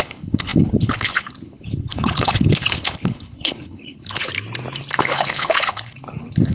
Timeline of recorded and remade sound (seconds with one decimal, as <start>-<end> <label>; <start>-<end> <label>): 0.0-4.3 remade; 4.3-4.9 recorded; 4.9-6.5 remade